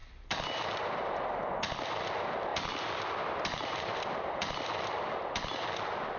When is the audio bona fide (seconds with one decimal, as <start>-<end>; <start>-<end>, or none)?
0.7-2.5; 5.3-6.2